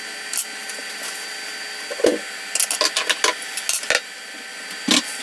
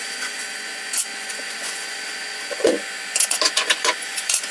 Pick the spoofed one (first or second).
second